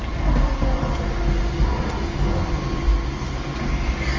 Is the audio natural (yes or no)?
yes